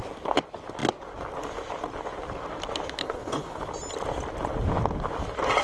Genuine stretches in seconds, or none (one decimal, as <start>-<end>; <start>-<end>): 0.0-3.0; 3.6-5.6